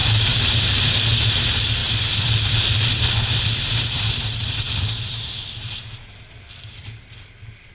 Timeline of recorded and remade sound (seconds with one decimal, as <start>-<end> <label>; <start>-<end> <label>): 0.0-0.9 remade; 0.9-1.8 recorded; 1.8-2.7 remade; 2.7-7.7 recorded